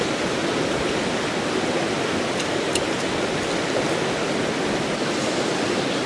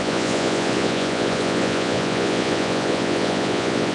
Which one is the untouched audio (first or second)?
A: first